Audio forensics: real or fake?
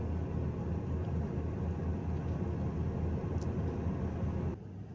real